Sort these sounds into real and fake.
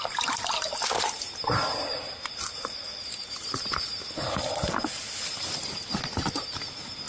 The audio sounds real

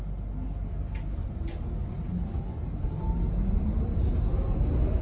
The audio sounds real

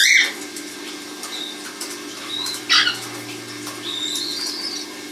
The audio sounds fake